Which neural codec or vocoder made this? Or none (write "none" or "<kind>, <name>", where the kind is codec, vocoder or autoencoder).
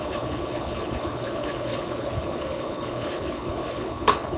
codec, HILCodec